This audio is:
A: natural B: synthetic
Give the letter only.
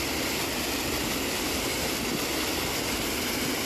A